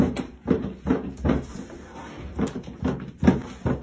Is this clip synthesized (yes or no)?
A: no